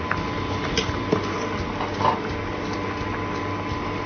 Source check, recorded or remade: recorded